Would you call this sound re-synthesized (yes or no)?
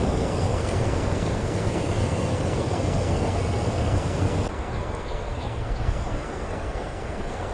yes